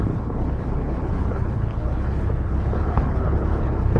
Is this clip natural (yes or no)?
no